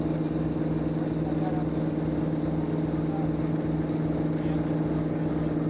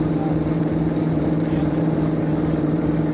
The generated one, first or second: second